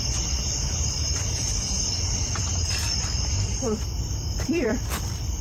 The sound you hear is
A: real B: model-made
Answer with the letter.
B